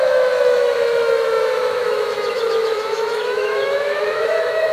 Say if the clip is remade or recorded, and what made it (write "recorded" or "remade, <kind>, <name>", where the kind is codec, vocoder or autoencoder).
remade, autoencoder, DAC-VAE